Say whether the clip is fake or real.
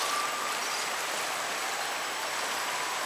fake